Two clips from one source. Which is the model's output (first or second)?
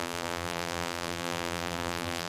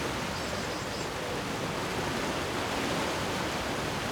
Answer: first